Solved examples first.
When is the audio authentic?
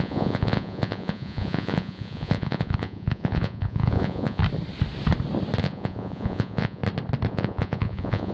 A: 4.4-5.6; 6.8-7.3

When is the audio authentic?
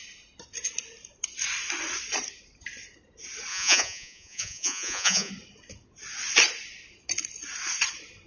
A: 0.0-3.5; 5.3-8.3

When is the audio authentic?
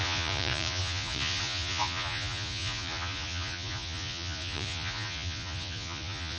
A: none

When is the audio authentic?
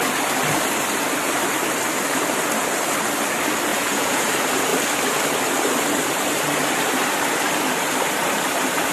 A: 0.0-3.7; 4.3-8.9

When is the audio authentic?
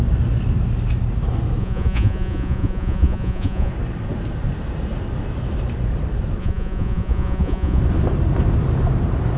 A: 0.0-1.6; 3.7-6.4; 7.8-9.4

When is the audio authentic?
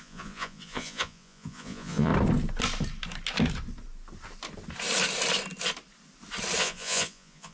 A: 2.1-6.6